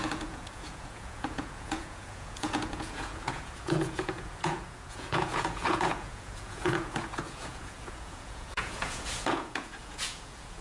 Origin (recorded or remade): remade